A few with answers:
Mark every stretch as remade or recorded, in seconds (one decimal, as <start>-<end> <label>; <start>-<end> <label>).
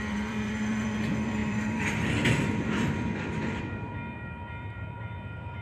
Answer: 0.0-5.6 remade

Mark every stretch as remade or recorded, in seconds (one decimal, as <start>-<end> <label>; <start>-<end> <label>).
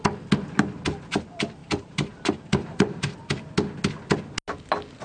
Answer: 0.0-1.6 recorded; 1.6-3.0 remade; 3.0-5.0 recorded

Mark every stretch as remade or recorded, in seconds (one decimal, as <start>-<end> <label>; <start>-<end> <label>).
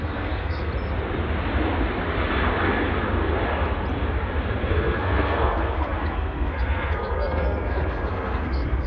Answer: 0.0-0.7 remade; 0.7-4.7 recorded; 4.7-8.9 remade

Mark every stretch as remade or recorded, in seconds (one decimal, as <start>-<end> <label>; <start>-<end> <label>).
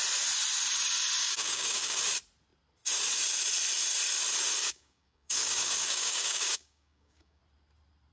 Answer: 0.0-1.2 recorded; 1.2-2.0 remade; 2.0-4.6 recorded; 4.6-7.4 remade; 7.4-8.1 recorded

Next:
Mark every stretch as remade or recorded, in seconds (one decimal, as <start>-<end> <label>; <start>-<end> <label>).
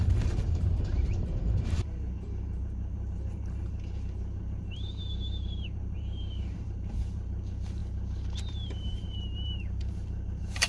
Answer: 0.0-7.8 remade; 7.8-8.4 recorded; 8.4-10.7 remade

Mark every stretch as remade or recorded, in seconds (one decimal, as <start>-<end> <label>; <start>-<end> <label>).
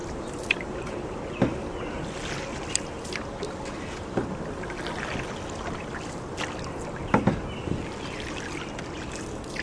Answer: 0.0-1.2 remade; 1.2-9.6 recorded